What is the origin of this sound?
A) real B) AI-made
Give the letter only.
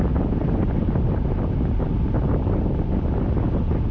A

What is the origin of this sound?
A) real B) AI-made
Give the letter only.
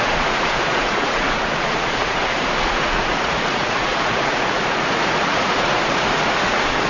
B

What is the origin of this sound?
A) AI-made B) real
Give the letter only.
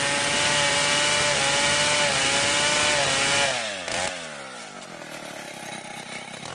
B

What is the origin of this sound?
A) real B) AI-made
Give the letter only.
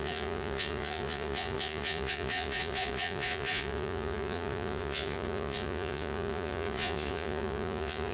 B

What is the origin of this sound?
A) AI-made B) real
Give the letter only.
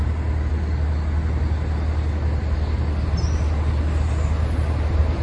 B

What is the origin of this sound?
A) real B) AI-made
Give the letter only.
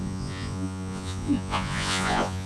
B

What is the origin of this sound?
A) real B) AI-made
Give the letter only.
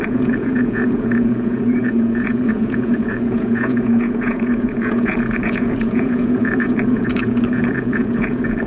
B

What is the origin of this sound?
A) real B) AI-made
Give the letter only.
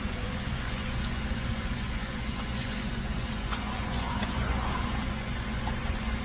B